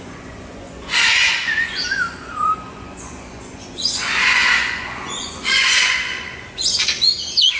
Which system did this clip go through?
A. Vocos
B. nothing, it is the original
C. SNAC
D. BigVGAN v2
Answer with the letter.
A